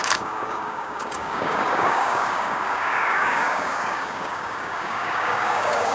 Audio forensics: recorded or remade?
remade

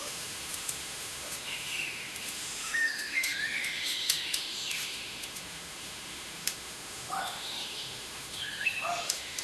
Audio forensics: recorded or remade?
remade